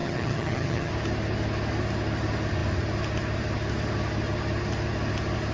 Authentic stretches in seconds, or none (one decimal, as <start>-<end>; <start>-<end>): 0.9-5.5